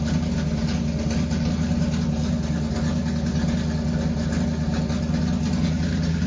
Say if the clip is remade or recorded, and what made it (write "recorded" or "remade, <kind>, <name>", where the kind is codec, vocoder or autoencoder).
recorded